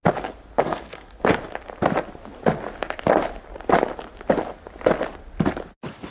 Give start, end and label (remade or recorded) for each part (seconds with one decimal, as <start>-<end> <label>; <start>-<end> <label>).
0.0-0.6 recorded; 0.6-1.2 remade; 1.2-6.1 recorded